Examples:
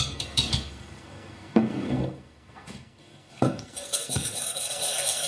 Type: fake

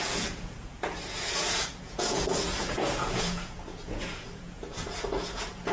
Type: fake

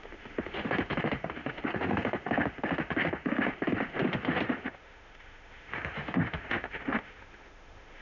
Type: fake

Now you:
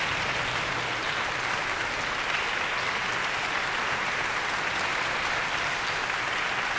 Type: real